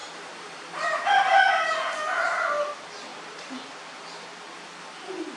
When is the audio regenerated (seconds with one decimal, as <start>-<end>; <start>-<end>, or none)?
0.0-1.4; 3.1-3.8